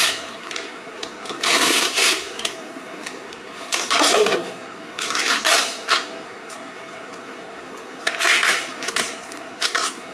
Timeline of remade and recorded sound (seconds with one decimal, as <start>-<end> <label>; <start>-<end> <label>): 0.0-10.1 remade